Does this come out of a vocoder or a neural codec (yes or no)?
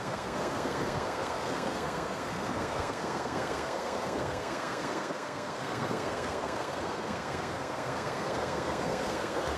yes